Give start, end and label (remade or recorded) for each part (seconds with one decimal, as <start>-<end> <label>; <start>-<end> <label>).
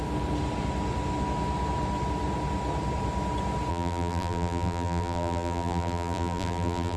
0.0-3.7 recorded; 3.7-7.0 remade